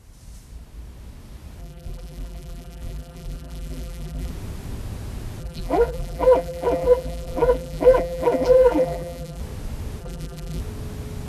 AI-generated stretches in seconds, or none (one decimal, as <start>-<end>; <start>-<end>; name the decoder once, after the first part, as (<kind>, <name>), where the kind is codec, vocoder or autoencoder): 1.6-4.3 (vocoder, BigVGAN v2); 5.4-9.4; 10.0-10.6